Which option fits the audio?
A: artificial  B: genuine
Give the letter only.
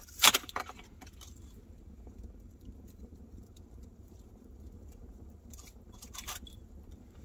A